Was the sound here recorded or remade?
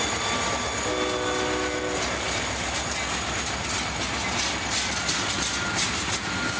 recorded